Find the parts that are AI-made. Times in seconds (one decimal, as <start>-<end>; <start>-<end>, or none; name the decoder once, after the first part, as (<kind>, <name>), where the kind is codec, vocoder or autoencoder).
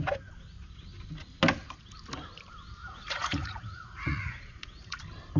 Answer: 2.8-5.0 (vocoder, Vocos)